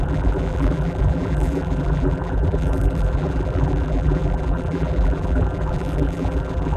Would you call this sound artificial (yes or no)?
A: yes